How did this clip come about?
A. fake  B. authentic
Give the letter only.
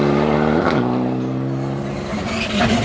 B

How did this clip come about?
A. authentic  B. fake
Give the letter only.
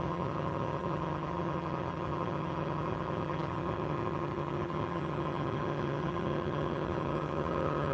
B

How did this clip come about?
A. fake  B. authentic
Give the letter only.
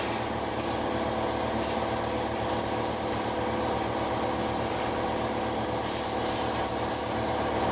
B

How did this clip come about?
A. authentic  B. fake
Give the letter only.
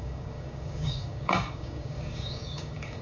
B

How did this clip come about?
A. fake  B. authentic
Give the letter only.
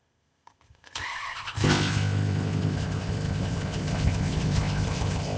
A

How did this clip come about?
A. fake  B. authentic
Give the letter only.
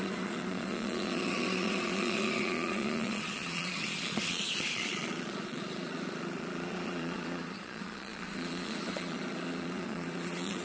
A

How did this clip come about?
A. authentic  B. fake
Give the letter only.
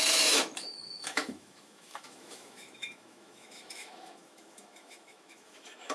B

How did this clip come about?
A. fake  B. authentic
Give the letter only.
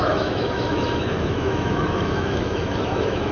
A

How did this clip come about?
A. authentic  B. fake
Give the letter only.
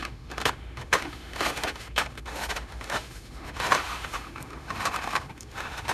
B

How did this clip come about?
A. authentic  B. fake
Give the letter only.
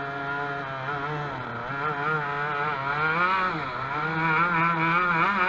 A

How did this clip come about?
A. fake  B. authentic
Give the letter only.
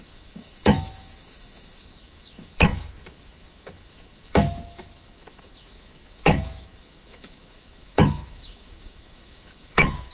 A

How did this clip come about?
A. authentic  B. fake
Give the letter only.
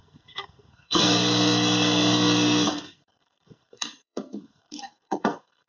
B